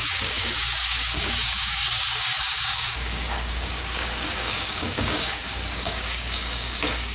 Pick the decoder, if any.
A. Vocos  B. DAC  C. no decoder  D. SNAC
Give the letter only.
B